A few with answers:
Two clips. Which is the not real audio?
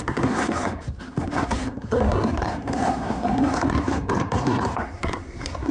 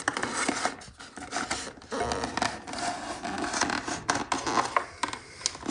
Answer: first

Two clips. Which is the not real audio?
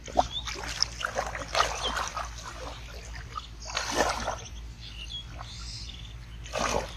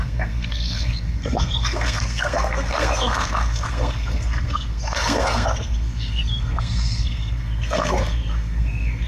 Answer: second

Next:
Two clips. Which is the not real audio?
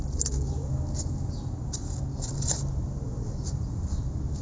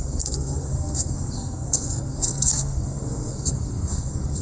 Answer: second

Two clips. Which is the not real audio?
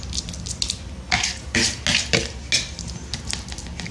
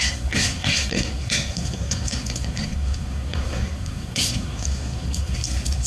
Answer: second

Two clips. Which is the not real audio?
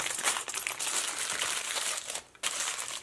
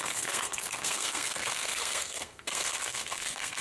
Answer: second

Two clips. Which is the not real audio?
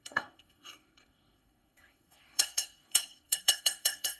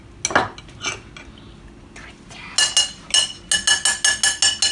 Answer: first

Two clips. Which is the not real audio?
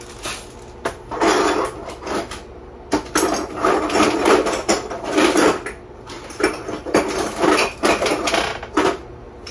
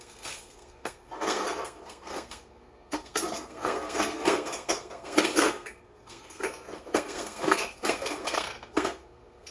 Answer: second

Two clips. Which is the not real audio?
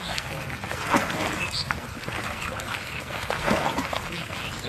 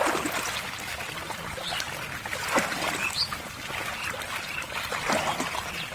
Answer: first